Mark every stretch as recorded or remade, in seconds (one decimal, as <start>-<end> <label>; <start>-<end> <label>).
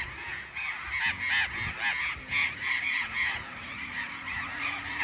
0.0-2.4 recorded; 2.4-5.0 remade